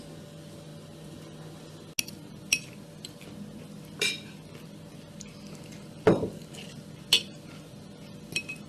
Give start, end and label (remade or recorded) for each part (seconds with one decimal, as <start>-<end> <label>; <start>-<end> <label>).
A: 0.0-8.7 recorded